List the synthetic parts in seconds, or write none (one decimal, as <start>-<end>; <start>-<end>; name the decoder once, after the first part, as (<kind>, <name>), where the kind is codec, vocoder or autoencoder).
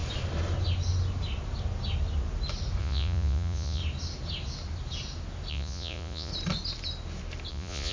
2.8-3.8 (vocoder, Vocos); 5.5-6.3; 7.5-7.9